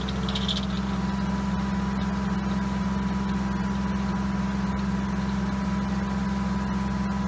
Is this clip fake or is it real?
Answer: real